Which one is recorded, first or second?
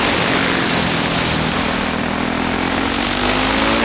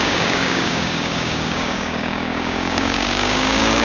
first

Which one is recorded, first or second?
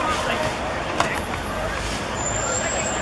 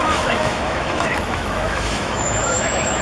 first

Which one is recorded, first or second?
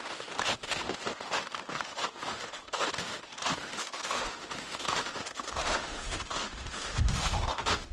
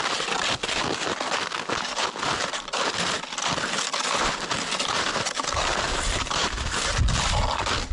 second